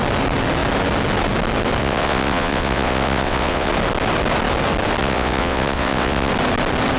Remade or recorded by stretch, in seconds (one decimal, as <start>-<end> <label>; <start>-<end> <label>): 0.0-1.8 recorded; 1.8-3.7 remade; 3.7-5.0 recorded; 5.0-6.3 remade; 6.3-7.0 recorded

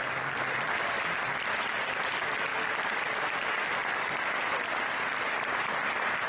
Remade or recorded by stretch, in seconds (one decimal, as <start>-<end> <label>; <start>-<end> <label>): 0.0-6.3 recorded